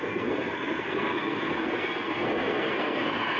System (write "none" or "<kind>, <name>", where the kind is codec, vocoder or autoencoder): codec, SNAC